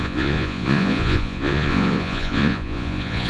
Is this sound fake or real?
fake